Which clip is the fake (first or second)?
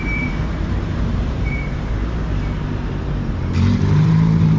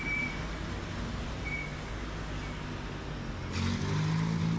first